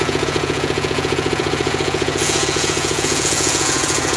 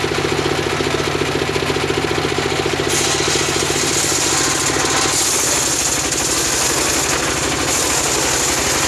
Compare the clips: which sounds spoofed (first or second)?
first